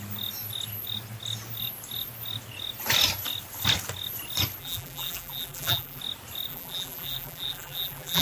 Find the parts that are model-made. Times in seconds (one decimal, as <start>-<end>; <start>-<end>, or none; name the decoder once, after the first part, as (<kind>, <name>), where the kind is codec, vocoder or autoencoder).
4.6-6.0 (vocoder, BigVGAN v2); 6.5-8.2